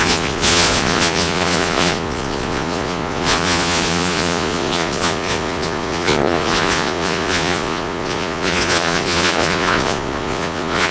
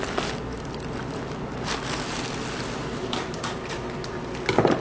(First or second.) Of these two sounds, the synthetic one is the first